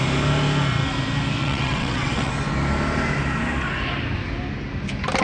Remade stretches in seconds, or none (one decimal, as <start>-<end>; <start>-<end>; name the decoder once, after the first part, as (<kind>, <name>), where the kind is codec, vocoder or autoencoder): 1.4-2.3 (vocoder, WaveNeXt)